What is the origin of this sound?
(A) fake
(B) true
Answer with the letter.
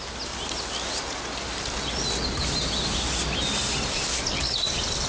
B